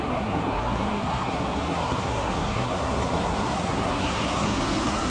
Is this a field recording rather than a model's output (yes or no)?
no